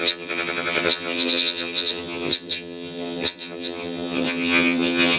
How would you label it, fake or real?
fake